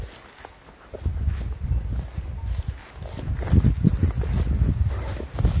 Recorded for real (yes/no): yes